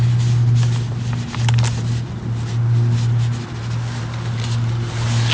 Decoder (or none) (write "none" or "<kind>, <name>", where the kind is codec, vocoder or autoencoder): none